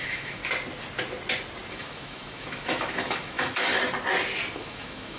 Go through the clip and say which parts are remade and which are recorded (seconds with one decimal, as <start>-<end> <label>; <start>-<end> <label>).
0.0-0.4 remade; 0.4-1.7 recorded; 1.7-3.7 remade; 3.7-4.5 recorded; 4.5-5.2 remade